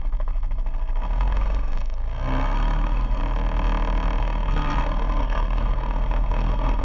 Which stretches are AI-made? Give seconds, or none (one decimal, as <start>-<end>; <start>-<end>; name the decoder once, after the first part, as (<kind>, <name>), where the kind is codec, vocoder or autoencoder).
0.0-3.2 (codec, SNAC); 4.2-6.8